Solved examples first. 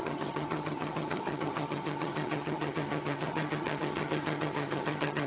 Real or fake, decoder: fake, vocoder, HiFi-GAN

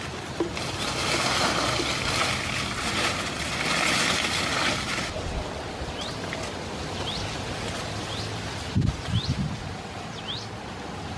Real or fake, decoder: real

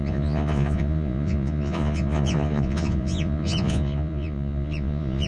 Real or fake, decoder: fake, vocoder, Vocos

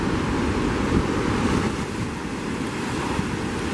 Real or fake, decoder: real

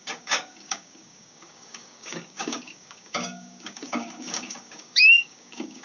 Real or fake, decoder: fake, codec, DAC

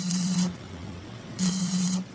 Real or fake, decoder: fake, vocoder, WaveNeXt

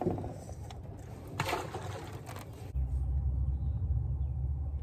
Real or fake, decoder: real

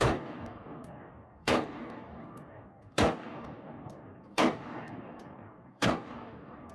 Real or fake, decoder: fake, codec, DAC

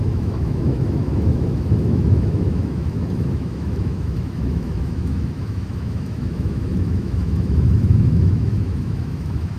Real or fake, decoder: fake, autoencoder, DAC-VAE